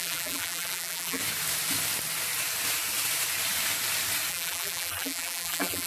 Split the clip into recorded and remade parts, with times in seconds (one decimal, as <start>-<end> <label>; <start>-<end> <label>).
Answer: 0.0-1.2 remade; 1.2-4.3 recorded; 4.3-5.9 remade